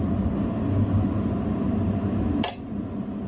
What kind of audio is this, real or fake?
real